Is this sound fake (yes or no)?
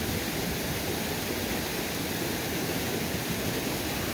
no